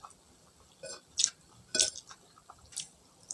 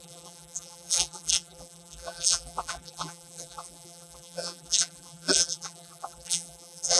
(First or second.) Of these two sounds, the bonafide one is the first